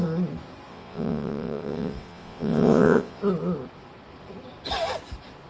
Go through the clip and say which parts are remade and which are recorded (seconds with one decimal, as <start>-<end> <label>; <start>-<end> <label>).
0.0-0.7 recorded; 0.7-3.2 remade; 3.2-5.5 recorded